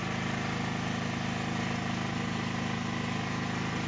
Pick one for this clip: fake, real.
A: real